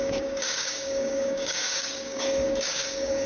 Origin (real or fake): fake